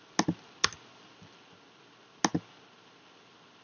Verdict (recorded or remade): recorded